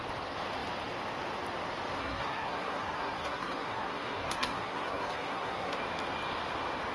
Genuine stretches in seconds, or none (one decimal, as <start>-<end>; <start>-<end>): 0.0-2.0; 5.8-6.9